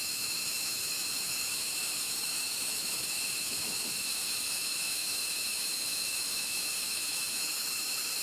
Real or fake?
fake